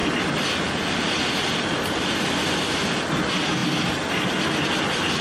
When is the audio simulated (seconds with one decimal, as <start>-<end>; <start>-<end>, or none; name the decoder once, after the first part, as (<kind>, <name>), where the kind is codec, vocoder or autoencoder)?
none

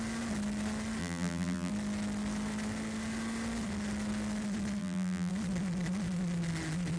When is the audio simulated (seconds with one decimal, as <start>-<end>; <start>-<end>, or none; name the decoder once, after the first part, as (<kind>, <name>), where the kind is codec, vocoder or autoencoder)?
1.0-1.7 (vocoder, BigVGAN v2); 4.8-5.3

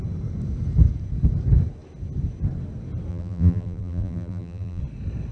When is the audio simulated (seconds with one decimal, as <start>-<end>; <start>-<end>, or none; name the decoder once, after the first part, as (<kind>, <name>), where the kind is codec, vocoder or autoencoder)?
3.1-4.8 (vocoder, BigVGAN v2)